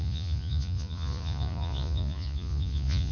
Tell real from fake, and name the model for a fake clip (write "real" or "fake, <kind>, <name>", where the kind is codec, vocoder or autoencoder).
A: fake, vocoder, Vocos